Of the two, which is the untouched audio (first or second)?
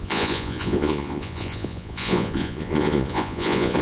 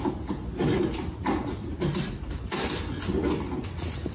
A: second